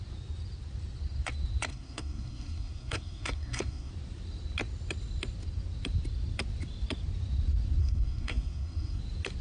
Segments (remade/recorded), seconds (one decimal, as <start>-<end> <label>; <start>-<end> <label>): 0.0-1.7 recorded; 1.7-3.9 remade; 3.9-7.8 recorded; 7.8-9.0 remade; 9.0-9.4 recorded